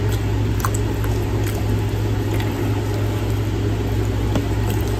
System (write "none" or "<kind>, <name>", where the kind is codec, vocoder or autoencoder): none